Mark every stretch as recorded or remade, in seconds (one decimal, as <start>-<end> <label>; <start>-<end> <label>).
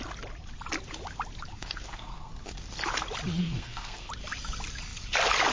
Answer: 0.0-1.5 recorded; 1.5-2.3 remade; 2.3-3.4 recorded; 3.4-4.1 remade; 4.1-5.5 recorded